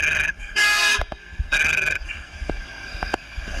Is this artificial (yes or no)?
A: yes